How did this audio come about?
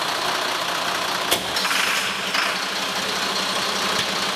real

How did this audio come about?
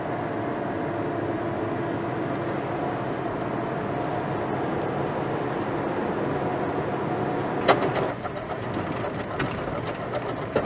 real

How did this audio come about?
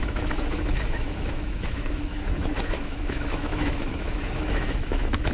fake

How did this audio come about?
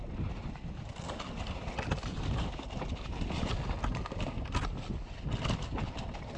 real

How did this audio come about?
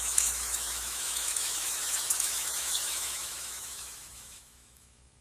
fake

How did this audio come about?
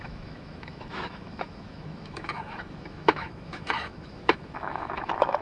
fake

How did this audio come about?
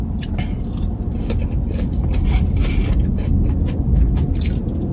real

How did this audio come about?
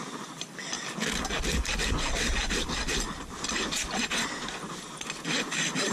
real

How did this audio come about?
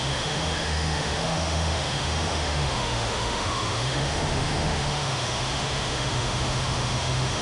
fake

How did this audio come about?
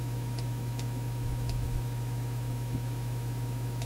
fake